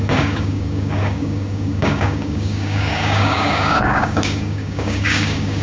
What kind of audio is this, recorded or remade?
remade